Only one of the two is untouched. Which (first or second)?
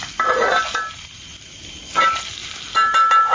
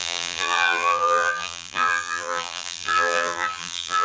first